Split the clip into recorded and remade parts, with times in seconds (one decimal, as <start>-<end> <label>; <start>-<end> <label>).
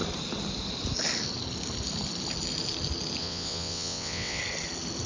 0.0-3.2 recorded; 3.2-4.4 remade; 4.4-5.1 recorded